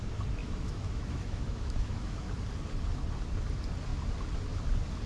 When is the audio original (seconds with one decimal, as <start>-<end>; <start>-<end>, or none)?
0.0-0.4; 2.3-5.1